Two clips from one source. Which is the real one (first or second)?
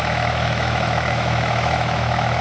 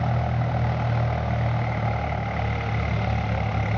second